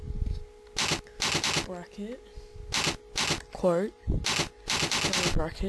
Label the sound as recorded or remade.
recorded